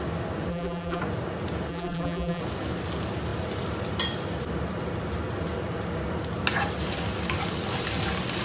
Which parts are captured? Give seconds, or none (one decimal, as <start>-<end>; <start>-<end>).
0.0-0.5; 1.0-1.7; 2.4-8.4